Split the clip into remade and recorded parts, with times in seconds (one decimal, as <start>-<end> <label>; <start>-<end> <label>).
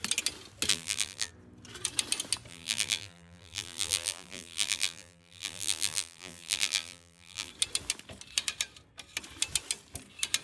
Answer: 0.0-0.7 recorded; 0.7-1.3 remade; 1.3-2.5 recorded; 2.5-7.5 remade; 7.5-10.4 recorded